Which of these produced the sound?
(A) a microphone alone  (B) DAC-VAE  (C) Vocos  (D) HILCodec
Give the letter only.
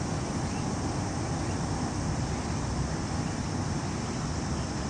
A